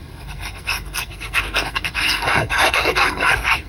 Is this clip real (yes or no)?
no